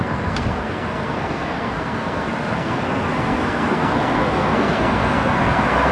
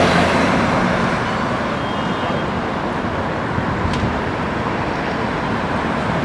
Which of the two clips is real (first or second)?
second